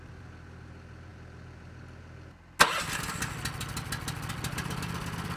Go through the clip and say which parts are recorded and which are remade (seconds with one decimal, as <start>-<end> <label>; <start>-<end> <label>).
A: 0.0-5.4 recorded